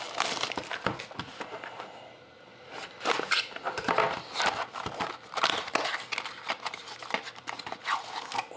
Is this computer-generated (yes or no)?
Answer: no